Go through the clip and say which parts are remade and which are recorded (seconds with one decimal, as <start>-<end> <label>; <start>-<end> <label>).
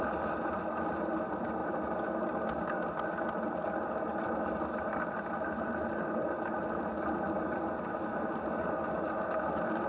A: 0.0-9.9 recorded